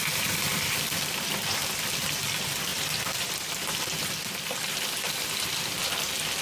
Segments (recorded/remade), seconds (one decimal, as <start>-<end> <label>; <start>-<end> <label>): 0.0-6.4 recorded